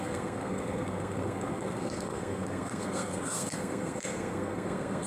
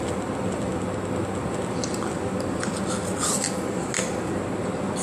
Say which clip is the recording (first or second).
second